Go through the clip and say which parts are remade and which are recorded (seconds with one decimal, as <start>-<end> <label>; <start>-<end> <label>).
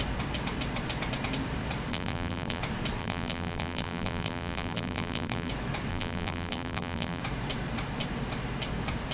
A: 0.0-1.9 recorded; 1.9-2.6 remade; 2.6-3.0 recorded; 3.0-5.5 remade; 5.5-5.9 recorded; 5.9-7.2 remade; 7.2-9.1 recorded